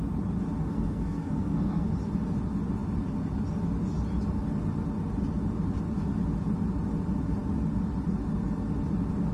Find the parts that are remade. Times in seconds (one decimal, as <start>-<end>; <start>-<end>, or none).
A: 0.6-1.9